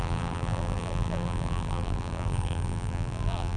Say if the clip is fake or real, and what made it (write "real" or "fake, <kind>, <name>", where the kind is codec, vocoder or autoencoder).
fake, vocoder, BigVGAN v2